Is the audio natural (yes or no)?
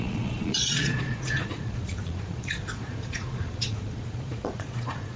no